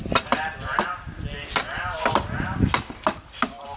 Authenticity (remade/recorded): recorded